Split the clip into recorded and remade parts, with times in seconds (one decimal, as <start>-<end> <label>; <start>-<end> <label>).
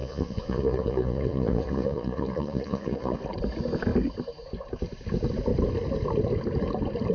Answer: 0.0-3.2 remade; 3.2-7.1 recorded